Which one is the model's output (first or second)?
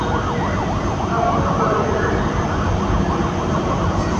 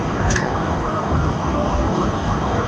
second